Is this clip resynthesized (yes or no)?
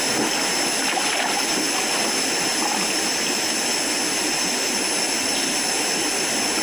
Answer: no